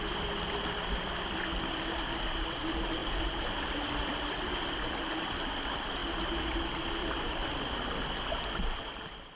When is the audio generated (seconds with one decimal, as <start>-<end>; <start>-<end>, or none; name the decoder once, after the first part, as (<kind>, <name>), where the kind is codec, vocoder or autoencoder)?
3.0-3.6 (vocoder, BigVGAN v2); 7.0-7.6